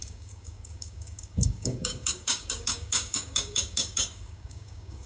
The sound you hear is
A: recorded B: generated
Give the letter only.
B